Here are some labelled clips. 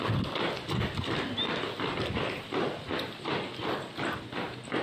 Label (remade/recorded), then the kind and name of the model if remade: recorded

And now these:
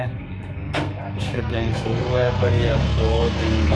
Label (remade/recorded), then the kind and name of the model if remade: remade, codec, SNAC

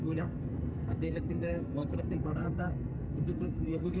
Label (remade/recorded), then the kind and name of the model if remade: remade, codec, SNAC